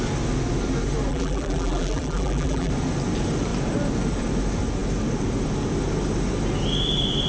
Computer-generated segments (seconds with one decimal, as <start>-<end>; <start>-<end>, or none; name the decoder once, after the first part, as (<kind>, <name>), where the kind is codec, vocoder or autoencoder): 1.1-2.7 (vocoder, BigVGAN v2)